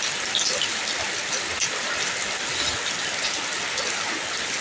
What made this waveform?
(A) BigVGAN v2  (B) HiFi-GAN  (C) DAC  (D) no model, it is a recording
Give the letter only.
D